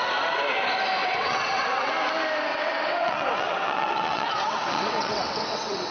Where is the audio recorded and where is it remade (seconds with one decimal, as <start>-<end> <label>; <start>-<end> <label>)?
0.0-1.0 recorded; 1.0-1.9 remade; 1.9-2.5 recorded; 2.5-5.9 remade